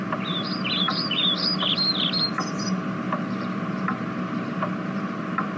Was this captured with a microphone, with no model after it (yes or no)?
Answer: no